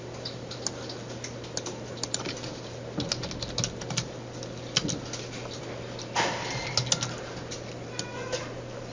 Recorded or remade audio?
recorded